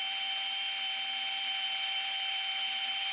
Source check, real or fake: real